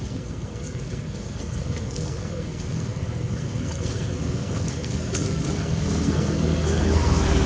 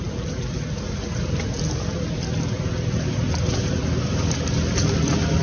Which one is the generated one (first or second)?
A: first